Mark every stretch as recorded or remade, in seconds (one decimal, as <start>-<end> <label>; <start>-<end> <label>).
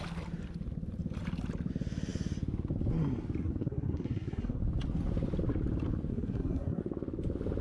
0.0-3.4 recorded; 3.4-4.6 remade; 4.6-6.1 recorded; 6.1-6.8 remade; 6.8-7.6 recorded